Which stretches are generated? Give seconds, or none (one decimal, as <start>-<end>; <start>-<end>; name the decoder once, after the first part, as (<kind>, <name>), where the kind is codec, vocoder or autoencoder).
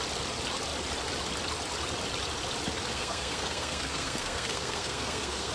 2.9-5.5 (codec, SNAC)